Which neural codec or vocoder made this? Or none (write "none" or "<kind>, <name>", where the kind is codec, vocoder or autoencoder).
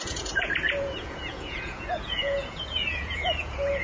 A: vocoder, Vocos